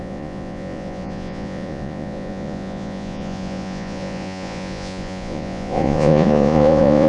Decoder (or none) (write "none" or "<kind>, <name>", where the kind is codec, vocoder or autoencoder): vocoder, Vocos